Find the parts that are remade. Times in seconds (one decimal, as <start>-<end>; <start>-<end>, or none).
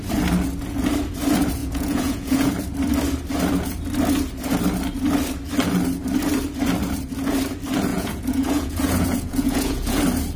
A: 1.6-2.5; 7.9-10.0